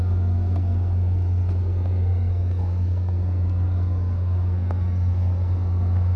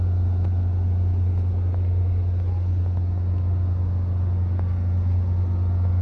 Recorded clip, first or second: second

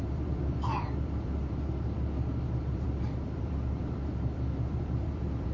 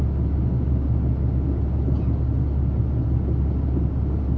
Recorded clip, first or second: second